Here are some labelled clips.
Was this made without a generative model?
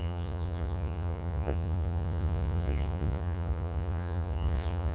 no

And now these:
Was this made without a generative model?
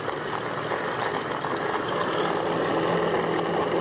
yes